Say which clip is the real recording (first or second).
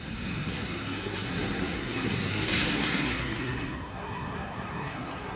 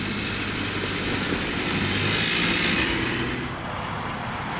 second